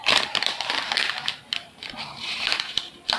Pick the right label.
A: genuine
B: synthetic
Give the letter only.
B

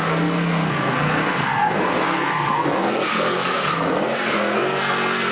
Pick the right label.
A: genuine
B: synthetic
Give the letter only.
B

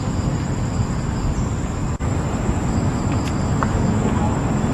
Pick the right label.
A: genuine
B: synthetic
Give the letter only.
A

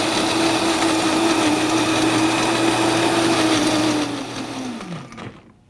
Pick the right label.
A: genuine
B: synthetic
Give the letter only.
A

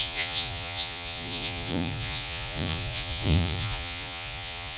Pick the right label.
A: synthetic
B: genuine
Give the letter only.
A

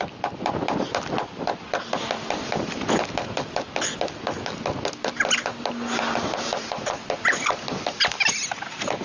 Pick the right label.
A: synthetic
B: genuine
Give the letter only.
B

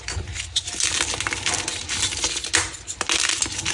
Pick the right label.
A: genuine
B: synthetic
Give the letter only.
A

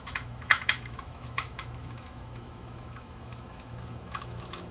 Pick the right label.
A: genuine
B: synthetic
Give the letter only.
B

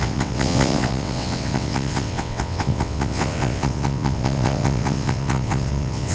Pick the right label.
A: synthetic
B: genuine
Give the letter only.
A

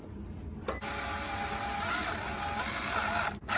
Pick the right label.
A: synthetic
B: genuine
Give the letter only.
B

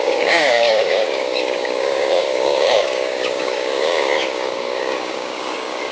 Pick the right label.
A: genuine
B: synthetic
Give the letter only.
B